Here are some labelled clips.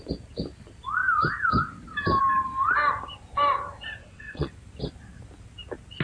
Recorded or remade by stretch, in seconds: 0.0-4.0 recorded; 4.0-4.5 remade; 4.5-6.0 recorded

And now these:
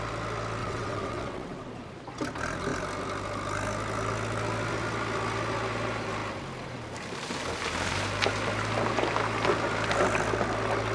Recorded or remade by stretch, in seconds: 0.0-0.6 recorded; 0.6-1.7 remade; 1.7-10.9 recorded

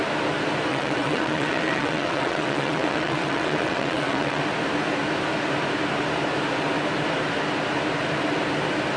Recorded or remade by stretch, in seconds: 0.0-0.7 recorded; 0.7-4.4 remade; 4.4-9.0 recorded